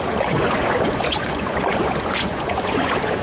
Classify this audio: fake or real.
fake